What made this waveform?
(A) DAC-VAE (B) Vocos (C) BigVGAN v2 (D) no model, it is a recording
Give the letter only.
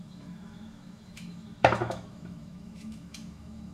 A